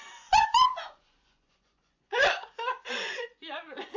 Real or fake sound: fake